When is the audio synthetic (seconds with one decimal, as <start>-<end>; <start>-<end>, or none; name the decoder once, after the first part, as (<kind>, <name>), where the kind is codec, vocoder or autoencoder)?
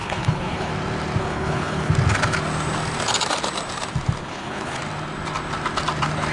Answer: 0.0-0.7 (codec, HILCodec); 1.2-1.9; 4.2-4.8